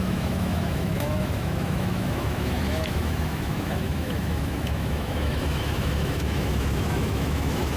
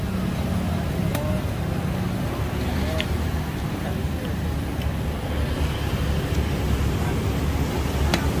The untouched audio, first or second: second